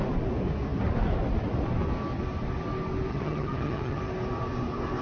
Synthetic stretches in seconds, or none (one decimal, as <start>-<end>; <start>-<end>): 3.1-4.0